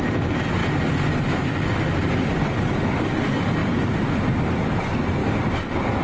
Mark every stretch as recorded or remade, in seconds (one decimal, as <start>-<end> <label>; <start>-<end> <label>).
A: 0.0-6.0 recorded